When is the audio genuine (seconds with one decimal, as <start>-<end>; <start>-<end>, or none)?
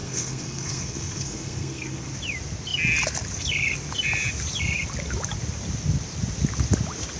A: 2.1-7.2